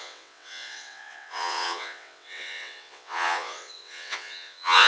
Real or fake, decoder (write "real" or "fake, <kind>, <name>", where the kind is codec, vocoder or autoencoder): fake, vocoder, WaveNeXt